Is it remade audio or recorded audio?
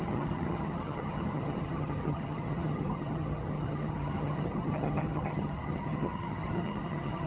remade